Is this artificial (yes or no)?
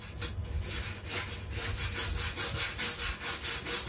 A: no